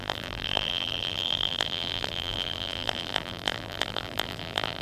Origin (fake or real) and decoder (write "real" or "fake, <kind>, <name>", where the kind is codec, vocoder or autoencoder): fake, vocoder, BigVGAN v2